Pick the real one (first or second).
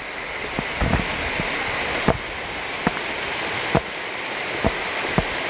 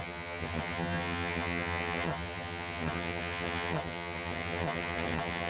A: first